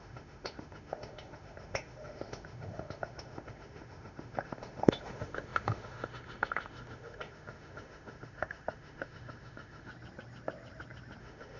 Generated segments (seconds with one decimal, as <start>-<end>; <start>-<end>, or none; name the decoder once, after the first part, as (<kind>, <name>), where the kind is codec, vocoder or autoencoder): 0.0-9.9 (autoencoder, DAC-VAE); 11.2-11.6